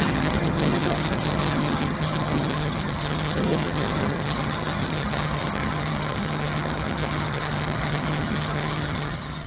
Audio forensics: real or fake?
fake